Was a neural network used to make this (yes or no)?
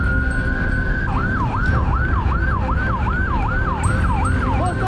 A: no